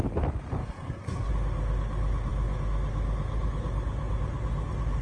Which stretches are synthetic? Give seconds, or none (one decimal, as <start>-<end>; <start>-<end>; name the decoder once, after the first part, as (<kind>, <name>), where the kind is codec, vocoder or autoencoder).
0.6-1.3 (codec, SNAC)